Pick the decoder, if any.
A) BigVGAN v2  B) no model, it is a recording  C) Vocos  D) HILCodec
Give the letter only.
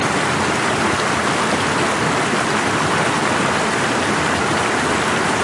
B